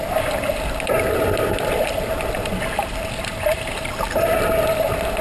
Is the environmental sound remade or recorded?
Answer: recorded